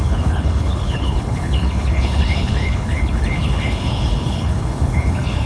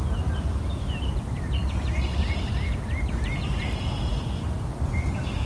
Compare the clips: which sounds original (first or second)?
second